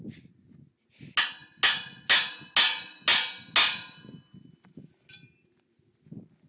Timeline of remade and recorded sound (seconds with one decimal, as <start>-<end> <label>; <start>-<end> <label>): 0.0-6.5 recorded